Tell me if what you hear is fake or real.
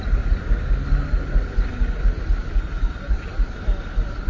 real